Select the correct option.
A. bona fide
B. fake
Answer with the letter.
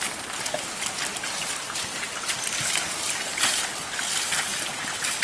A